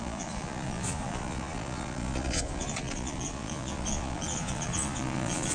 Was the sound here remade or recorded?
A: remade